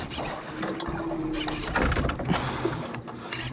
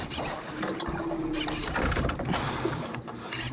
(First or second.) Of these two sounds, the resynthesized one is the second